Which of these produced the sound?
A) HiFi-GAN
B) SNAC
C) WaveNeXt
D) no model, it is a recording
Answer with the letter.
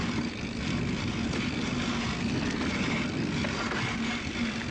D